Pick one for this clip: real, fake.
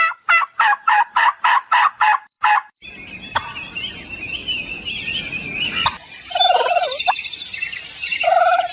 fake